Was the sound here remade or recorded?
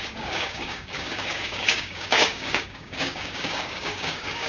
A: remade